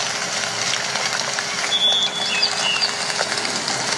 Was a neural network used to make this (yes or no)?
no